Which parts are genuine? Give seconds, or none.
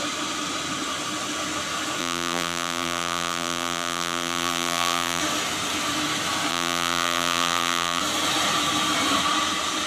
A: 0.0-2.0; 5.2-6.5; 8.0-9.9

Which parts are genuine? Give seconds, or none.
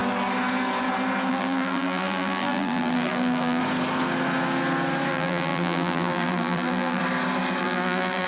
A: 0.0-1.3; 3.6-5.1; 7.0-7.6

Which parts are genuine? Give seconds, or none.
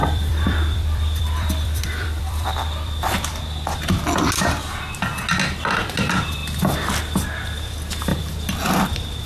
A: 3.4-8.1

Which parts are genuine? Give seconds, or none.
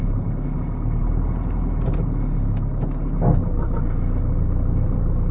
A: 0.0-5.3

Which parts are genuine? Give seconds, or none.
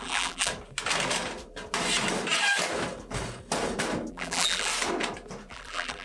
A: 0.5-4.1; 4.7-5.5